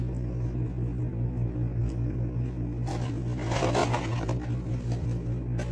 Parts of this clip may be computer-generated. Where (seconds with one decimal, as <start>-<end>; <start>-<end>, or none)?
none